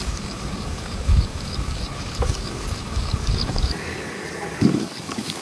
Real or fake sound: fake